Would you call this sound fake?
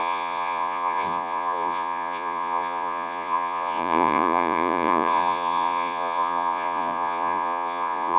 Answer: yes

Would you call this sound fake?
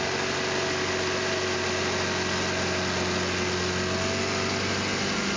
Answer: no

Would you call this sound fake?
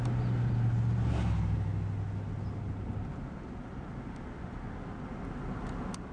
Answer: no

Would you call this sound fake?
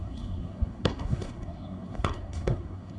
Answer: yes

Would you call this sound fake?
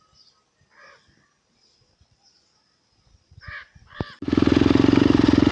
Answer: no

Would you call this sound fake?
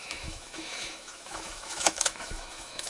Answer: yes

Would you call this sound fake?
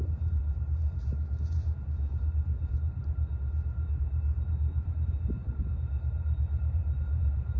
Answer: yes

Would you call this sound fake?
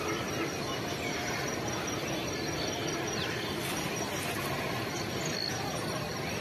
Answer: yes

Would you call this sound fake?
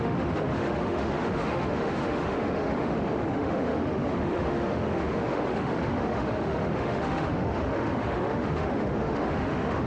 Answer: yes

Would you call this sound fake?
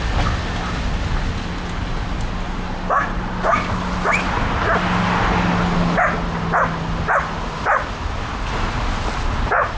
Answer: no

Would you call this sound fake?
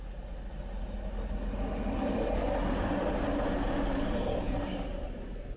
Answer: no